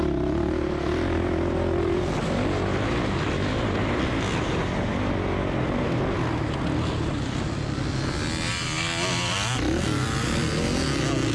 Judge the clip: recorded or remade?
recorded